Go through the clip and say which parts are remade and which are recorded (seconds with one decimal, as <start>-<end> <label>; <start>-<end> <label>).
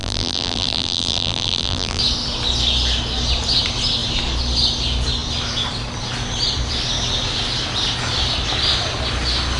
0.0-2.0 remade; 2.0-9.6 recorded